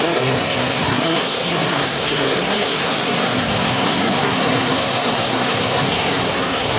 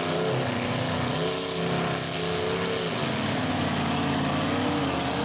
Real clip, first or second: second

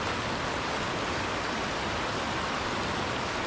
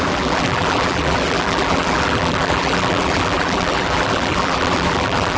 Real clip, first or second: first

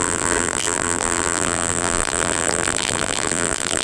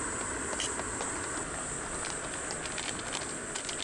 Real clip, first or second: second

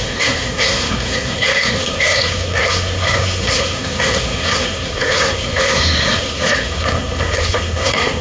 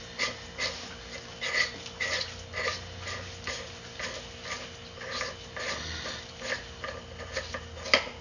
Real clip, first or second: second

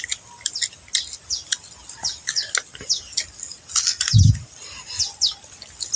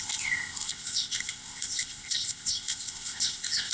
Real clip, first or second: first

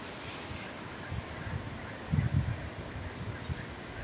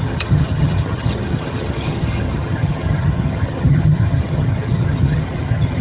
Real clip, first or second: first